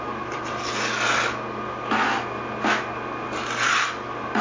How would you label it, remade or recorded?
recorded